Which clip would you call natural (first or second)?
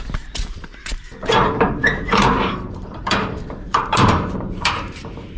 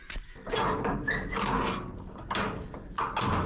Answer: second